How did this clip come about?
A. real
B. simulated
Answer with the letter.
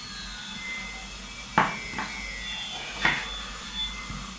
A